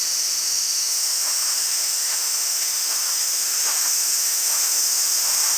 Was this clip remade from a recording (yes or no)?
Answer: yes